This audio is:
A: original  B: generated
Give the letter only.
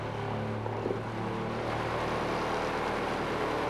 A